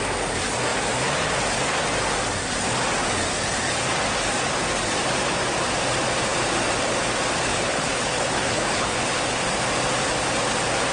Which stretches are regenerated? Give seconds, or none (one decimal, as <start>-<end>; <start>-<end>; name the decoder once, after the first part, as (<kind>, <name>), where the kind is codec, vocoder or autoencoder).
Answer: 7.5-9.2 (codec, HILCodec)